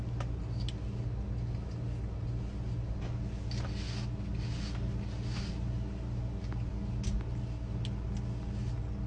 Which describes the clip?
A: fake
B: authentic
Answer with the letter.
B